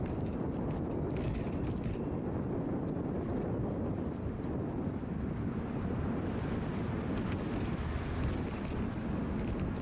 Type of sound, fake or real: real